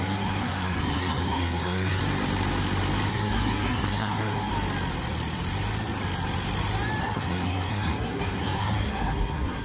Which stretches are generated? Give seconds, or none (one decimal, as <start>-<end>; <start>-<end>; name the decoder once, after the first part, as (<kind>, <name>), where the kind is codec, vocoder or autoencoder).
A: 0.0-2.0 (codec, SNAC); 3.1-4.5; 7.0-9.6